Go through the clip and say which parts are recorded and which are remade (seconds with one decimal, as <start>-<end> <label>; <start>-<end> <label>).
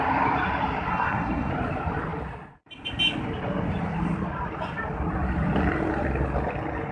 0.0-0.9 recorded; 0.9-1.5 remade; 1.5-6.9 recorded